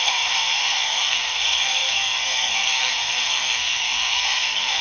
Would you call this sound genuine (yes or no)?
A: no